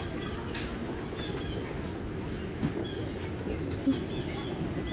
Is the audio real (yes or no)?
yes